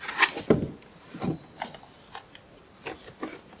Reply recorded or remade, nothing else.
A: recorded